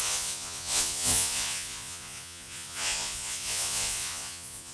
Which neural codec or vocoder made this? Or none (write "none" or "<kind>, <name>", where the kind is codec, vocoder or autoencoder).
vocoder, Vocos